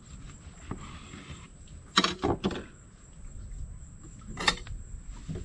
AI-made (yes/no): no